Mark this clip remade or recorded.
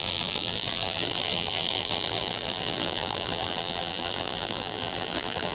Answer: remade